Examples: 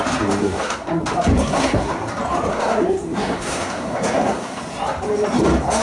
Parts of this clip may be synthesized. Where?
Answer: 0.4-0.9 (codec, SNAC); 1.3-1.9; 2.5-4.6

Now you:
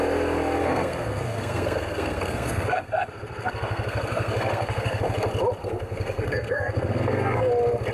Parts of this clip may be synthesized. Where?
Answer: 0.6-5.0 (codec, SNAC); 5.6-7.5

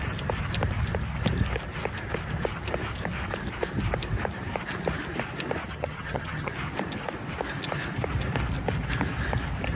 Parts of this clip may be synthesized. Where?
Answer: 5.7-6.5 (vocoder, HiFi-GAN)

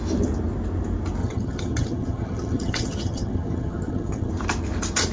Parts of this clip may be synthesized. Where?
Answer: 1.2-4.3 (vocoder, HiFi-GAN)

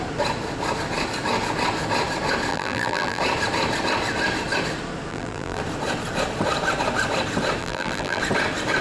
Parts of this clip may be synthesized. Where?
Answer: 2.5-3.2 (vocoder, BigVGAN v2); 5.1-5.6; 7.6-8.2

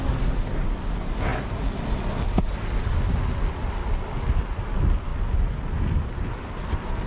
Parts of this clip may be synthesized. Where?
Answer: none

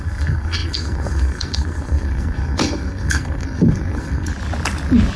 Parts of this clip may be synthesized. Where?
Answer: 0.0-4.3 (codec, SNAC)

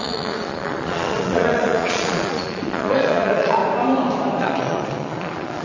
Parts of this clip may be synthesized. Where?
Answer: 0.0-3.6 (vocoder, Vocos); 4.4-5.6